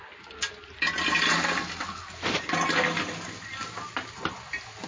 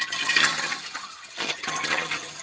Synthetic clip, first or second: second